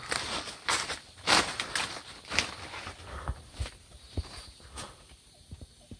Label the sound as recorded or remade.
recorded